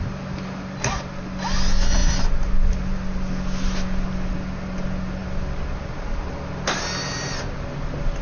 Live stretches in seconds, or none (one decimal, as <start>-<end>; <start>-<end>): 0.0-8.2

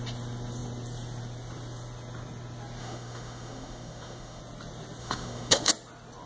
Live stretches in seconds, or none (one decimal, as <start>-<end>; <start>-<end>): 0.0-2.8; 4.4-5.0; 5.7-6.3

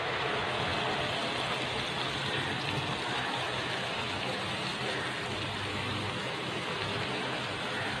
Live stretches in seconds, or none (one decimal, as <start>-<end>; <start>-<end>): 0.7-3.1; 4.7-5.7

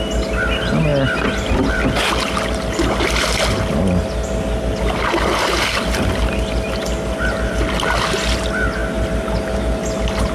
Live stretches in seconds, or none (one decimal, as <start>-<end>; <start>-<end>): 0.0-10.3

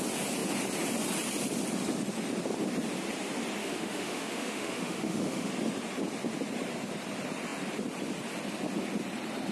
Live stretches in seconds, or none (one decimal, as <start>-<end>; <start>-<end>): 0.0-3.6; 5.5-9.5

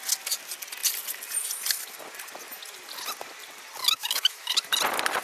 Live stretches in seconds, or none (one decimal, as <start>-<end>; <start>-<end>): 0.0-3.8; 4.6-5.2